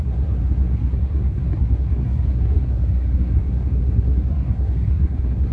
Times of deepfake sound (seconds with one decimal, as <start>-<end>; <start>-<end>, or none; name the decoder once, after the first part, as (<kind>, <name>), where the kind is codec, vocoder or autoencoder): 0.0-5.5 (codec, SNAC)